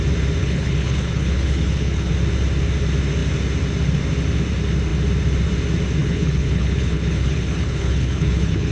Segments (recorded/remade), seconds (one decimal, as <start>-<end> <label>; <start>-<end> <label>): 0.0-0.4 recorded; 0.4-2.1 remade; 2.1-6.0 recorded; 6.0-8.7 remade